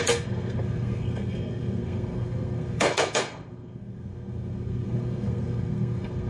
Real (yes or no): no